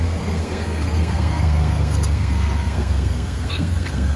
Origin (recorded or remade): remade